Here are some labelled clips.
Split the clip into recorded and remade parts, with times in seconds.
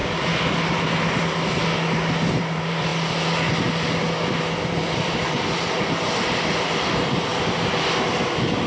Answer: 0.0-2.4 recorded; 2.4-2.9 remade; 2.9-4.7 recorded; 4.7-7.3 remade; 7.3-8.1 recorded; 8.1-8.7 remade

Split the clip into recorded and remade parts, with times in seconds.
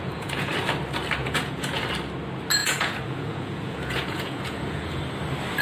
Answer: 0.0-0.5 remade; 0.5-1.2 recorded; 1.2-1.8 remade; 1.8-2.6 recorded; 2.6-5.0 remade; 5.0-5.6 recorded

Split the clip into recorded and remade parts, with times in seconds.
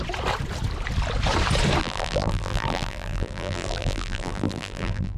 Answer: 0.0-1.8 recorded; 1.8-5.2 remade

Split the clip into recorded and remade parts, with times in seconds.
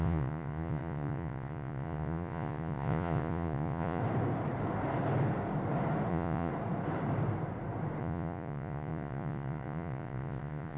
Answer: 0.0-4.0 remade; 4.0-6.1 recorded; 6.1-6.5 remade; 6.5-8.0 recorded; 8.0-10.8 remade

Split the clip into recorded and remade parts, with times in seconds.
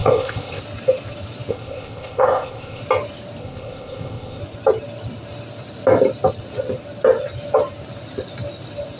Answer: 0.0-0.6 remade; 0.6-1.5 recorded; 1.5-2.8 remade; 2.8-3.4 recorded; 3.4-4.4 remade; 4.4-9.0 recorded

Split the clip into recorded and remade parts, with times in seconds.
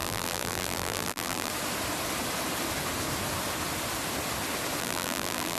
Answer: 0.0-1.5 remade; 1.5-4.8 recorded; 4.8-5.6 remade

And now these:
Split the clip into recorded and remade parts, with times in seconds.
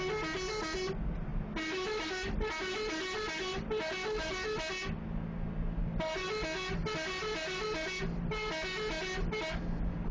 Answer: 0.0-10.1 recorded